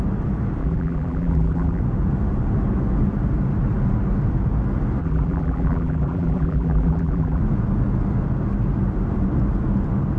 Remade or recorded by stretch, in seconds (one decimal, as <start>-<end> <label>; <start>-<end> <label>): 0.0-0.6 recorded; 0.6-1.8 remade; 1.8-5.0 recorded; 5.0-7.4 remade; 7.4-10.2 recorded